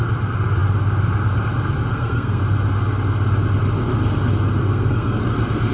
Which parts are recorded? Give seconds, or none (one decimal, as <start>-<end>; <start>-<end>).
0.0-1.9; 2.4-4.6; 5.2-5.7